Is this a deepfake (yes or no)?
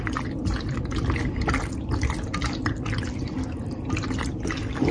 no